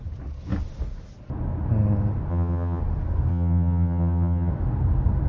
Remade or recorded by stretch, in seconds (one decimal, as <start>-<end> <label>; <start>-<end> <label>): 0.0-2.3 recorded; 2.3-2.8 remade; 2.8-3.3 recorded; 3.3-4.5 remade; 4.5-5.3 recorded

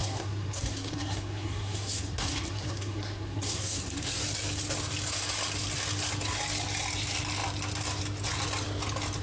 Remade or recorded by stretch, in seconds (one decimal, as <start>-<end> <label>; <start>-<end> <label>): 0.0-4.2 remade; 4.2-9.2 recorded